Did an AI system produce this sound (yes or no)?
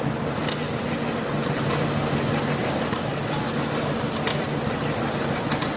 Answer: no